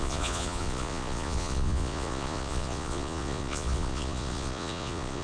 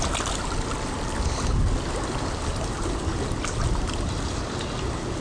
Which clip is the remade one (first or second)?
first